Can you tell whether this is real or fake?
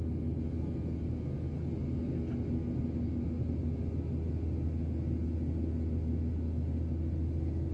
real